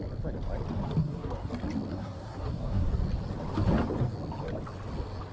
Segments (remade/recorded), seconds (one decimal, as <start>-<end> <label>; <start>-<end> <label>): 0.0-1.0 recorded; 1.0-1.5 remade; 1.5-1.9 recorded; 1.9-2.9 remade; 2.9-5.3 recorded